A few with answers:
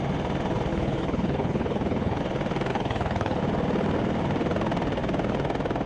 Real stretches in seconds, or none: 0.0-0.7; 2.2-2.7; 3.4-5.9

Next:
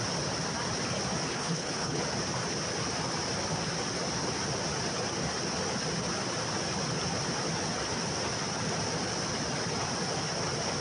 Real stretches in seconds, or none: 0.0-1.3; 2.0-10.8

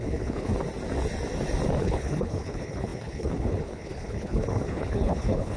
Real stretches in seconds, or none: 0.5-1.8

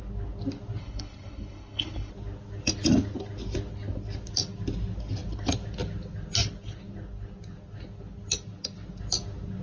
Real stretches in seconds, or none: 0.0-0.8; 2.1-9.6